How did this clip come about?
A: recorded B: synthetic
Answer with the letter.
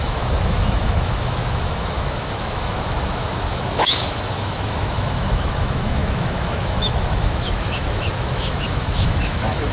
B